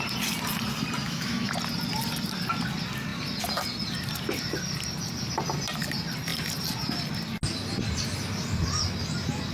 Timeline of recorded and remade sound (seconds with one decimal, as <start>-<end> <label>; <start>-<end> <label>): 0.0-1.0 recorded; 1.0-1.5 remade; 1.5-9.5 recorded